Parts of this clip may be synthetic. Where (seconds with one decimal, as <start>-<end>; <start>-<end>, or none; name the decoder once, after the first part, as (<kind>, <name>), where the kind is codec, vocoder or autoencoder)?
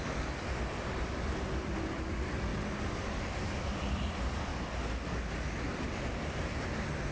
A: 0.0-2.5 (vocoder, BigVGAN v2); 3.6-4.5; 5.9-7.1